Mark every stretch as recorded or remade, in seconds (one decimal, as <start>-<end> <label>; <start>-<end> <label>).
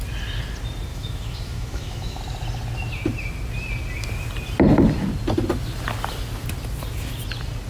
0.0-0.9 recorded; 0.9-2.2 remade; 2.2-7.7 recorded